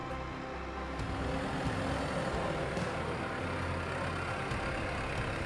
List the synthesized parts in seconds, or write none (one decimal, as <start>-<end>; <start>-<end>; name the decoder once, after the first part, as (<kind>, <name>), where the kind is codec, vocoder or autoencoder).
none